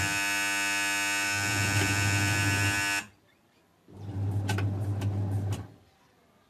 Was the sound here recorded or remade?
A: recorded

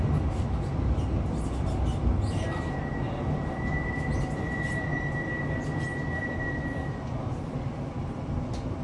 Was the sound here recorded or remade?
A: recorded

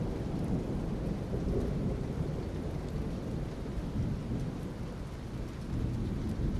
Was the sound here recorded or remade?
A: recorded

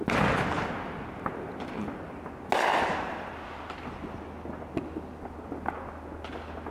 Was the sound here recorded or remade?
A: recorded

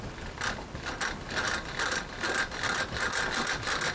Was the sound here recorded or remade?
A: recorded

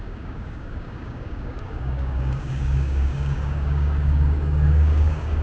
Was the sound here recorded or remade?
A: remade